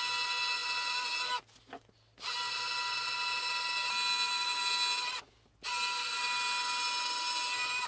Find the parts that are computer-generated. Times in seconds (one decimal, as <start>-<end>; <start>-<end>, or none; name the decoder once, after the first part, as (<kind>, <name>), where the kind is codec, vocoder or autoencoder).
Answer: none